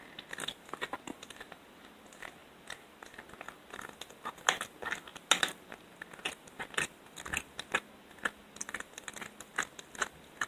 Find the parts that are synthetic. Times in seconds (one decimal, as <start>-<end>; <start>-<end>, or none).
2.4-3.2